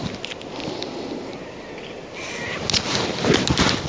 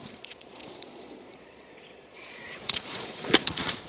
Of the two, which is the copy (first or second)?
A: second